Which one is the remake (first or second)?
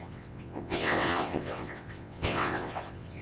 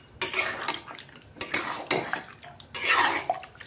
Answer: first